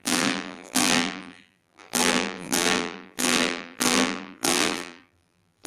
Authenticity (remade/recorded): remade